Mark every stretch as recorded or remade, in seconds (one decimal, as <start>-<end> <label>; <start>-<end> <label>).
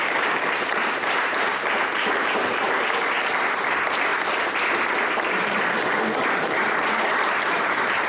0.0-4.1 remade; 4.1-5.4 recorded; 5.4-8.1 remade